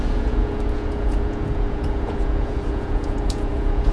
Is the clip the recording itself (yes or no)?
no